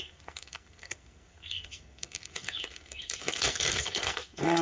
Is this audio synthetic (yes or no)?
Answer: yes